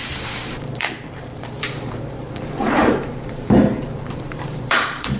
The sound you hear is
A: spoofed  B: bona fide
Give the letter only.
A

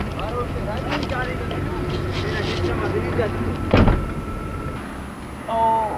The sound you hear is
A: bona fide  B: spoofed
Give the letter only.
A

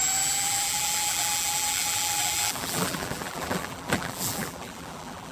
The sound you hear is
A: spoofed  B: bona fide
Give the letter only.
A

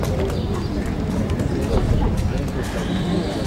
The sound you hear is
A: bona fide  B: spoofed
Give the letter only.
A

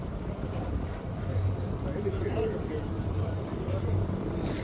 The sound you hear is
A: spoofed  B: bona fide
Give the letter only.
A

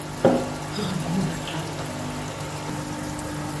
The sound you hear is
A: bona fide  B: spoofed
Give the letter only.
A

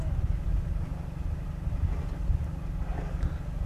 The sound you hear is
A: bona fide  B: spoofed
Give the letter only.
A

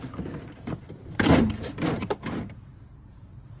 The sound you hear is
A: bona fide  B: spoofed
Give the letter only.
B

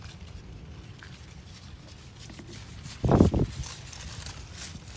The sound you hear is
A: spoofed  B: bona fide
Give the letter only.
B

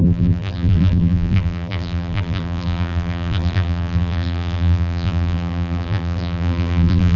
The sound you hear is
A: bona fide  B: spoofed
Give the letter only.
B